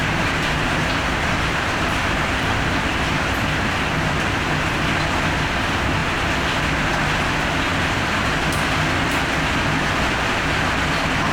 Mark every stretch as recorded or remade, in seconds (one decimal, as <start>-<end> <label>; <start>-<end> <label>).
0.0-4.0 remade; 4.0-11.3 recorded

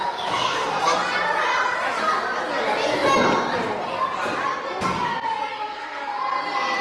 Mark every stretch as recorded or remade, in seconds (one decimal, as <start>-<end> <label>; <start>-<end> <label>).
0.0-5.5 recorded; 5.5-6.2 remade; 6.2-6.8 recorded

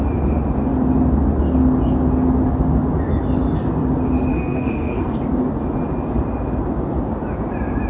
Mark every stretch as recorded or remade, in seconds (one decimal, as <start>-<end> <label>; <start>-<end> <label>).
0.0-4.3 recorded; 4.3-5.2 remade; 5.2-7.9 recorded

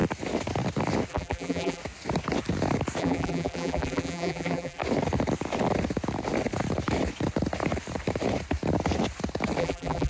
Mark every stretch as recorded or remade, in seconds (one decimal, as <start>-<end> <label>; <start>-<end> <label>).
0.0-1.1 recorded; 1.1-1.8 remade; 1.8-3.0 recorded; 3.0-4.8 remade; 4.8-9.6 recorded; 9.6-10.1 remade